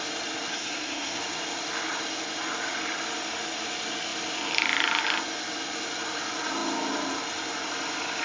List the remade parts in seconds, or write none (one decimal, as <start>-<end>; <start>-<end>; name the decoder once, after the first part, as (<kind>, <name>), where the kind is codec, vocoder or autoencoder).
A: 0.5-1.2 (codec, SNAC)